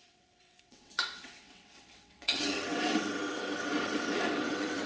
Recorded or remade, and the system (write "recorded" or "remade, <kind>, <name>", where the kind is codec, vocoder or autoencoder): remade, vocoder, WaveNeXt